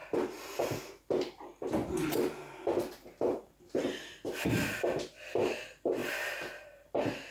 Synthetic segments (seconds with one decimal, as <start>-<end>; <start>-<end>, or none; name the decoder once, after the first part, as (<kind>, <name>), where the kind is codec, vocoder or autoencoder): none